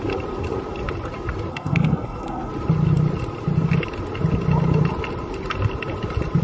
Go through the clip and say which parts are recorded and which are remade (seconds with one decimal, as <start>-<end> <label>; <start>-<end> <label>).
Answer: 0.0-1.5 recorded; 1.5-2.5 remade; 2.5-6.4 recorded